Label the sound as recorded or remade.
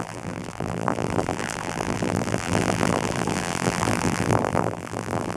remade